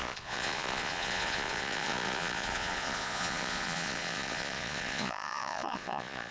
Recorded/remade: remade